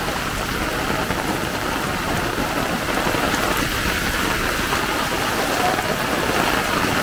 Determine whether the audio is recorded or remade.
recorded